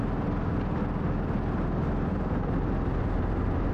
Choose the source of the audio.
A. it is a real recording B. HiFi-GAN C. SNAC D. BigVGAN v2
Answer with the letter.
A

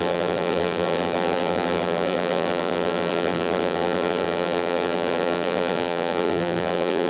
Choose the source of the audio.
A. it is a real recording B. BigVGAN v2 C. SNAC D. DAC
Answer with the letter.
B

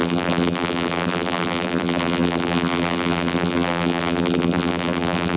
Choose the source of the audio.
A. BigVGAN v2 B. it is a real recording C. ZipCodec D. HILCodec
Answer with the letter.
A